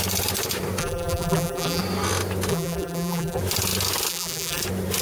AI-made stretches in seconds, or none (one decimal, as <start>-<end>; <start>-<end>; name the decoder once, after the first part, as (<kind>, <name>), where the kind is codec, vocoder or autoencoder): 0.8-1.8 (vocoder, BigVGAN v2); 2.5-3.4; 4.1-4.6